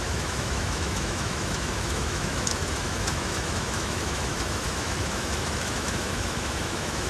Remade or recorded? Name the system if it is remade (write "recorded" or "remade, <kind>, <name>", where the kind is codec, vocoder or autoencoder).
remade, autoencoder, DAC-VAE